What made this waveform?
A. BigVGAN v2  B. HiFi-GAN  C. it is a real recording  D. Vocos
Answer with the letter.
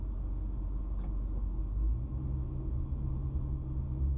C